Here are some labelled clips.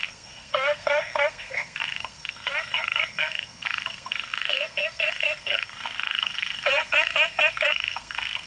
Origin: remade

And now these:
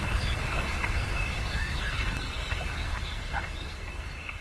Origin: remade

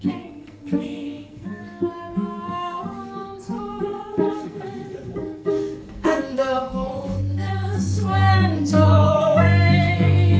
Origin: remade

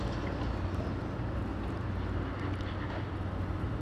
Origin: recorded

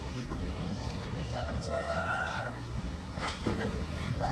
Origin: remade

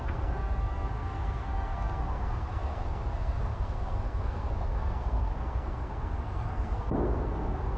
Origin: remade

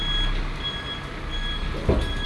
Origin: recorded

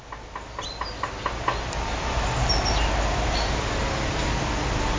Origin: recorded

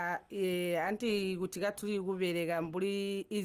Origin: recorded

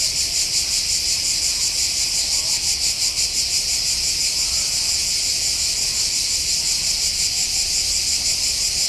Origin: recorded